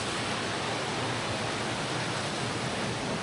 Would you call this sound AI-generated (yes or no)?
no